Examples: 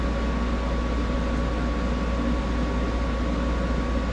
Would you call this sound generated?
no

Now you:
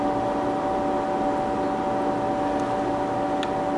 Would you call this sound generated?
no